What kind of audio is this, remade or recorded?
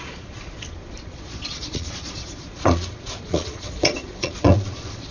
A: remade